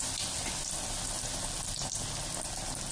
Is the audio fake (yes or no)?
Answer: no